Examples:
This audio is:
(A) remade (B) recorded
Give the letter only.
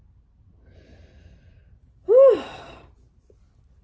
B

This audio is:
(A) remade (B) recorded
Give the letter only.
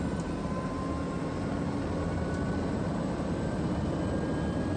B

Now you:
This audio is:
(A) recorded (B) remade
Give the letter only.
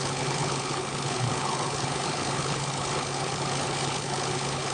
B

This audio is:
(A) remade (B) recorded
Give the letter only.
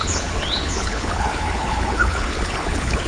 A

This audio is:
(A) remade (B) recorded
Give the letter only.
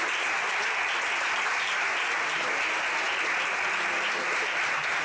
B